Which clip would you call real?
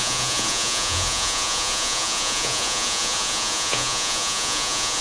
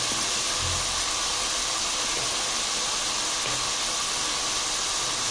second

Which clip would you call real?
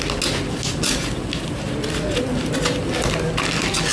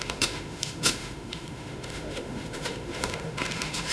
first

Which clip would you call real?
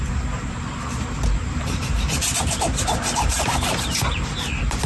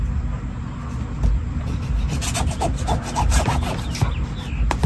second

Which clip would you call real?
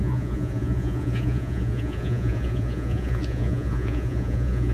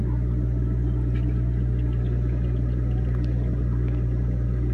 second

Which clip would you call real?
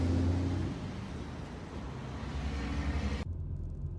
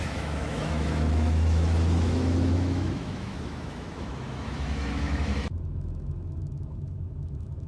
first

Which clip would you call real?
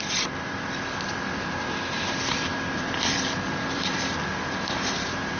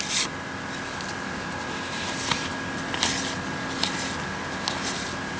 second